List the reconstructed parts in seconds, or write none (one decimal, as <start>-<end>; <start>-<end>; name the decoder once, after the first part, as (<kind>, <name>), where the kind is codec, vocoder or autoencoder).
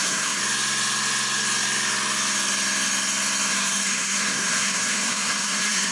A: 0.0-0.4 (codec, SNAC); 3.5-5.9